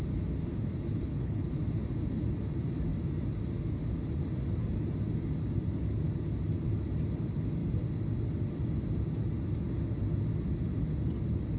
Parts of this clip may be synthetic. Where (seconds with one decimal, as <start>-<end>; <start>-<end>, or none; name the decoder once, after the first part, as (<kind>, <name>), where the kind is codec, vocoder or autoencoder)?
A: 0.9-1.5 (codec, HILCodec)